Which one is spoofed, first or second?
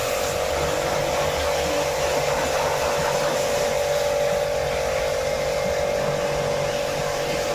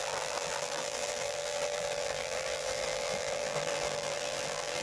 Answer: second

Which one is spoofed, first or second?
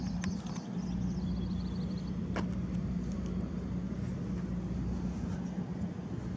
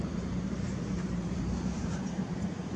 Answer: second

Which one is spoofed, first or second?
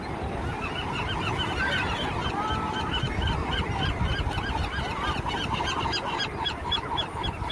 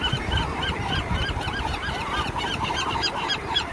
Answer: second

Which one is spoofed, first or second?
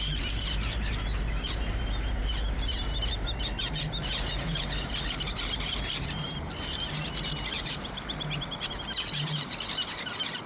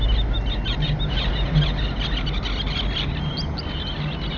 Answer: first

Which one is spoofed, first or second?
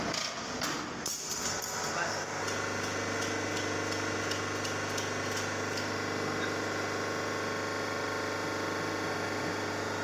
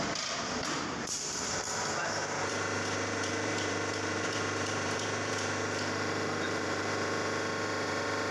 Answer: second